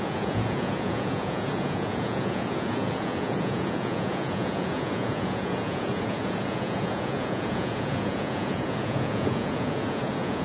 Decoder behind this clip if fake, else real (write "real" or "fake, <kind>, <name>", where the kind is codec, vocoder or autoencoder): fake, vocoder, Vocos